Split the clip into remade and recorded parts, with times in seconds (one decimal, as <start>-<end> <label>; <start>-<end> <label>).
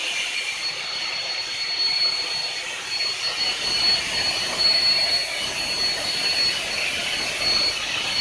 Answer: 0.0-5.2 remade; 5.2-6.0 recorded; 6.0-8.2 remade